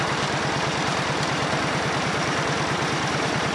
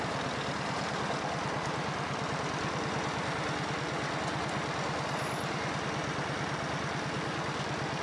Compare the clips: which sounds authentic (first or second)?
second